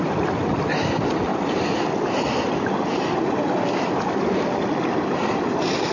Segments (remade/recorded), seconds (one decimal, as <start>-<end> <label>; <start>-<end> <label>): 0.0-1.3 remade; 1.3-2.8 recorded; 2.8-5.9 remade